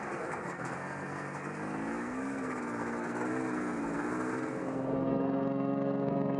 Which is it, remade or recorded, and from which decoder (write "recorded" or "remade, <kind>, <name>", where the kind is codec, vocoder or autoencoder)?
remade, codec, SNAC